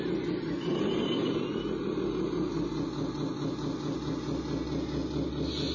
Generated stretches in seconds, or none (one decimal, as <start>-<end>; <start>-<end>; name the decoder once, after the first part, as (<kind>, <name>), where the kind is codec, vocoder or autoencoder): none